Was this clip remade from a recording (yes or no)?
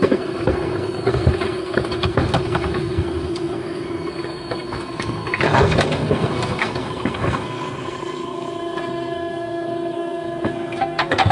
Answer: yes